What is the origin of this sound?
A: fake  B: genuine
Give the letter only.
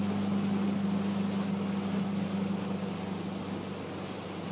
B